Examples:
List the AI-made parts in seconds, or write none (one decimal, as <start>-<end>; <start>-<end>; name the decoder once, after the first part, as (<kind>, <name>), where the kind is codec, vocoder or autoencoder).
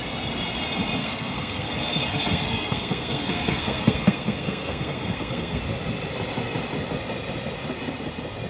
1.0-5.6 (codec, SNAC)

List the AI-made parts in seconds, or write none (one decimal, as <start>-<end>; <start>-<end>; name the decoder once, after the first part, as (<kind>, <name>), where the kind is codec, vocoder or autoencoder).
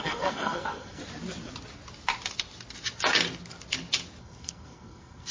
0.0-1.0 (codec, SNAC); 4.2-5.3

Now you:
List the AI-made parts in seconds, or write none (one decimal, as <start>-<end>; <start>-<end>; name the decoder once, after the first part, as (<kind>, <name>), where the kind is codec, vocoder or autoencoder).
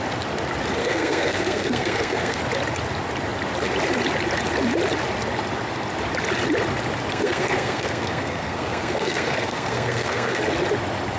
0.8-2.4 (codec, SNAC); 7.1-10.4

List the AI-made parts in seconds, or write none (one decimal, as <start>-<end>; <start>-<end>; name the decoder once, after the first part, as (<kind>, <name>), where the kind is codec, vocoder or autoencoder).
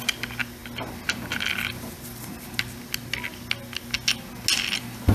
none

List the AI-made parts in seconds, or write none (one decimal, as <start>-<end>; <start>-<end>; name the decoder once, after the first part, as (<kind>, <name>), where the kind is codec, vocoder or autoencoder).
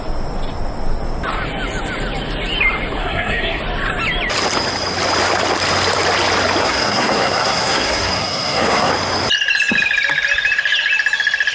3.0-3.6 (codec, SNAC); 6.6-8.9